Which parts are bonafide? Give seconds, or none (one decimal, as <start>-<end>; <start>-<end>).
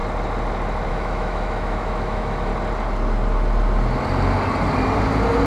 0.0-0.9; 2.5-5.5